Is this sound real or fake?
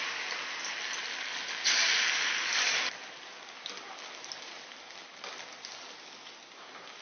real